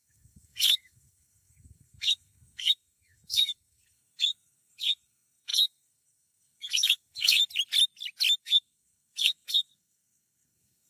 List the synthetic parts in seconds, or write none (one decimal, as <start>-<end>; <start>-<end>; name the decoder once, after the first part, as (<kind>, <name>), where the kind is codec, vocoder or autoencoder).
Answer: 0.0-7.4 (codec, SNAC); 8.4-10.9